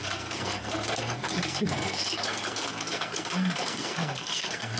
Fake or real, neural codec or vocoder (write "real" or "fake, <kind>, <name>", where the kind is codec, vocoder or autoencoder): fake, codec, SNAC